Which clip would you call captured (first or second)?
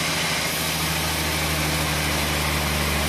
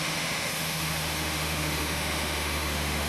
first